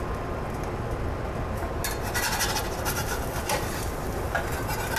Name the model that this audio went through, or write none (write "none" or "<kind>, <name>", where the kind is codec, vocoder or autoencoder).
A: none